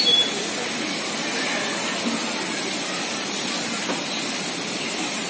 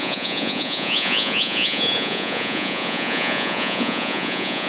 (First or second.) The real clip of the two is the first